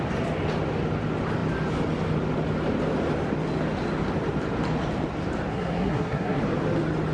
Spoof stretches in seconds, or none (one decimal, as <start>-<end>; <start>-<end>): 5.5-6.4